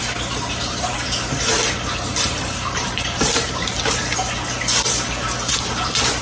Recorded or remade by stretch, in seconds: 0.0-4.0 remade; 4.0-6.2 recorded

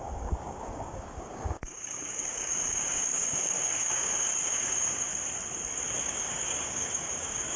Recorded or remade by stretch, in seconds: 0.0-5.1 remade; 5.1-6.0 recorded; 6.0-7.6 remade

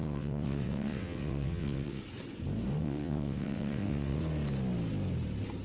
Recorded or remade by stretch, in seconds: 0.0-2.0 remade; 2.0-2.8 recorded; 2.8-4.2 remade; 4.2-5.6 recorded

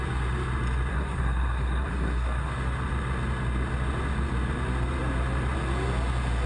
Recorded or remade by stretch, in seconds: 0.0-0.9 recorded; 0.9-2.5 remade; 2.5-6.5 recorded

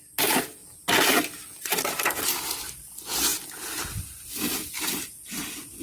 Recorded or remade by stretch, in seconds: 0.0-5.8 recorded

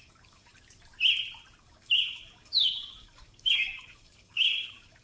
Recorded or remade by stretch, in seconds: 0.0-0.5 remade; 0.5-1.6 recorded; 1.6-5.0 remade